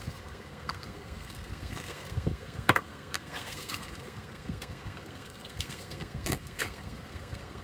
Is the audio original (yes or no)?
no